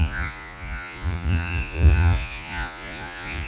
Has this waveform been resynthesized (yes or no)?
yes